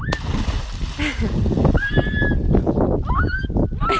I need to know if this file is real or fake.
real